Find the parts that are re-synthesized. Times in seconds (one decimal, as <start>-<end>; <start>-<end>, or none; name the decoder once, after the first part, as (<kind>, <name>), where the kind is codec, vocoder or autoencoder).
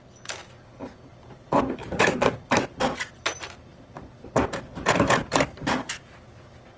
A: 1.8-2.6 (vocoder, BigVGAN v2); 3.7-4.3; 4.7-6.8